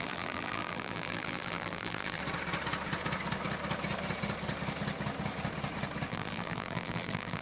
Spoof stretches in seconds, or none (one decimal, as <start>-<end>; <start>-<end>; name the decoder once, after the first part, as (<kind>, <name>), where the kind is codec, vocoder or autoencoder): 0.0-2.2 (vocoder, BigVGAN v2); 6.1-7.4